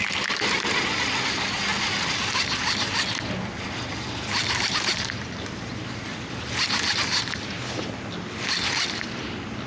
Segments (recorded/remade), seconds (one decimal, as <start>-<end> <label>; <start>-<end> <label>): 0.0-9.7 recorded